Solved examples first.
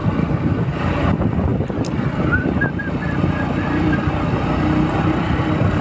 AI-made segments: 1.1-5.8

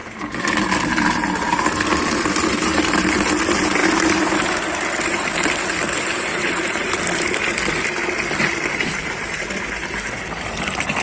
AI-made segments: 6.3-6.9

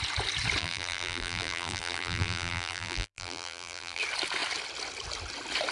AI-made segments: 0.6-4.0

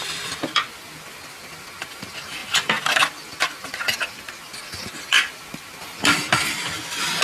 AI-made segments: none